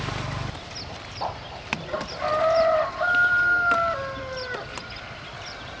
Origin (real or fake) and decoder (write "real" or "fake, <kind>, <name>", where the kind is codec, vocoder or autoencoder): real